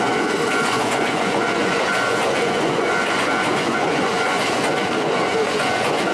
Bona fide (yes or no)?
no